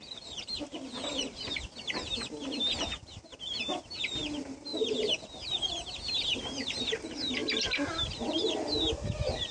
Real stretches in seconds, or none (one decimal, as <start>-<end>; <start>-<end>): 0.0-9.5